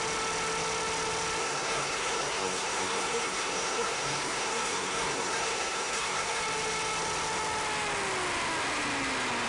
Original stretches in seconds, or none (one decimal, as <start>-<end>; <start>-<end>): 0.0-1.4; 6.4-9.5